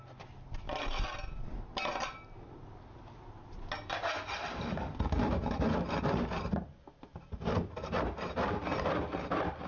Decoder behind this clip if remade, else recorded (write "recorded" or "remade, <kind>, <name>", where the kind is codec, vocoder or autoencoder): recorded